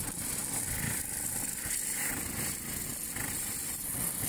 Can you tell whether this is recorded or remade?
recorded